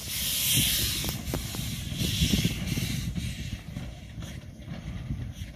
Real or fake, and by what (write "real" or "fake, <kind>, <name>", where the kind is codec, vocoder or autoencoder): real